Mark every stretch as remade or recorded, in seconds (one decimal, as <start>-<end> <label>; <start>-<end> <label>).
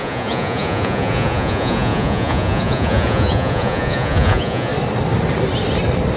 0.0-4.7 remade; 4.7-6.2 recorded